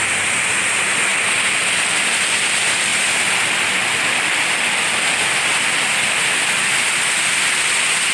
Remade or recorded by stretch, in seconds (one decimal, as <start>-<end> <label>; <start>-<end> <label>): 0.0-8.1 recorded